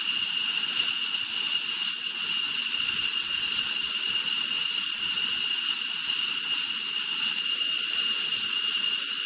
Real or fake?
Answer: real